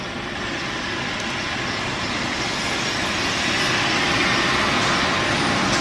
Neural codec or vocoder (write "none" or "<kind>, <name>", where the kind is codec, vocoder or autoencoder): none